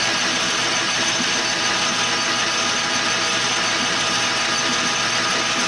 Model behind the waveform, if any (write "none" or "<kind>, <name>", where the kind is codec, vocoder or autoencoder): none